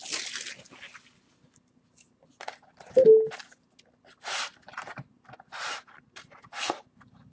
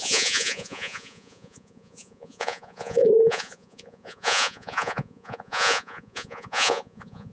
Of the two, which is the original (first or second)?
first